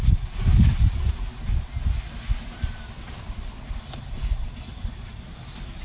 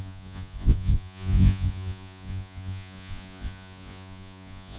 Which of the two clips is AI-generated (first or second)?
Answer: second